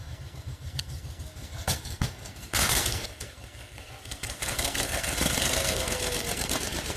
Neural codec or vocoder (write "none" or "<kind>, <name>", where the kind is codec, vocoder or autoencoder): codec, SNAC